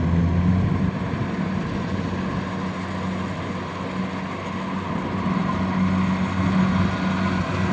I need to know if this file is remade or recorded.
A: recorded